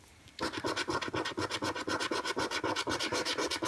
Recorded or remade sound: recorded